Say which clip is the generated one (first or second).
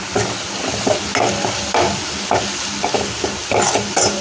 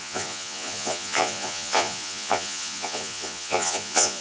second